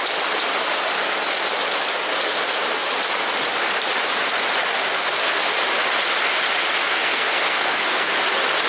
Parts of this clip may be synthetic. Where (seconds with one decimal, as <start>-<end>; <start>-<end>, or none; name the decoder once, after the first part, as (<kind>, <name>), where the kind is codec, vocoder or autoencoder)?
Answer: 6.8-8.1 (codec, SNAC)